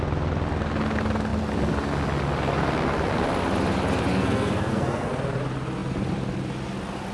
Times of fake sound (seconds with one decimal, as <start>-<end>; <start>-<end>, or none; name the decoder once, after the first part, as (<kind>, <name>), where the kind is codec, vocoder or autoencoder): 4.1-5.1 (codec, SNAC)